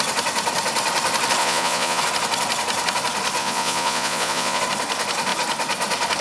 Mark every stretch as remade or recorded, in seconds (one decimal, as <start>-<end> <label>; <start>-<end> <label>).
0.0-1.4 recorded; 1.4-2.0 remade; 2.0-3.4 recorded; 3.4-4.6 remade; 4.6-6.2 recorded